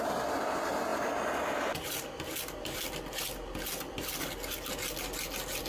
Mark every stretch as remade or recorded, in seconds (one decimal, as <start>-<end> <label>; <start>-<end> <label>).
0.0-5.7 recorded